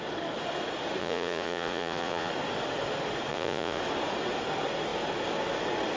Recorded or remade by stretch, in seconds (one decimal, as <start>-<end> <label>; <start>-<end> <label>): 0.0-1.0 recorded; 1.0-2.3 remade; 2.3-3.3 recorded; 3.3-3.8 remade; 3.8-6.0 recorded